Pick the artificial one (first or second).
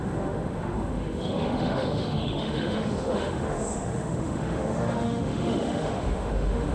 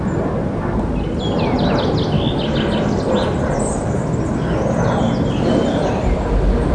first